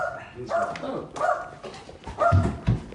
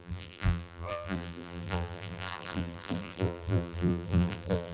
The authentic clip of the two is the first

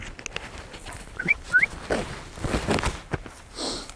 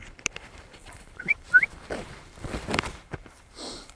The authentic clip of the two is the first